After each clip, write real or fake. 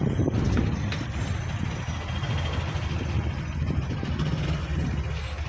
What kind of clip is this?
real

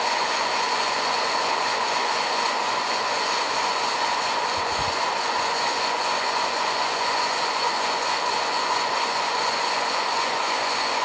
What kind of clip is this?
fake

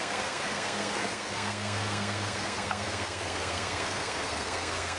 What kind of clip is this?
fake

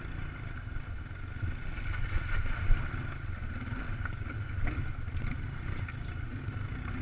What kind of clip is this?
real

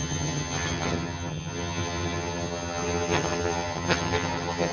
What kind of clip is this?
fake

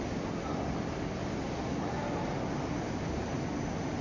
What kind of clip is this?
real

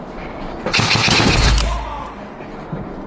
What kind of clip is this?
real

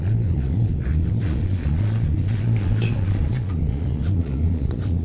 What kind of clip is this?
fake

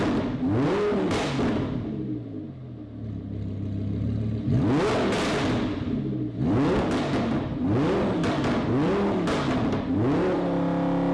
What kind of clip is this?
real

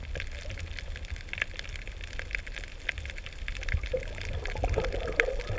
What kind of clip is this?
real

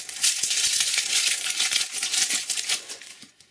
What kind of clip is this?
fake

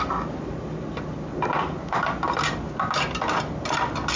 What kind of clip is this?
real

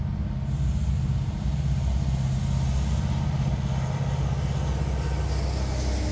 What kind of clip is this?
real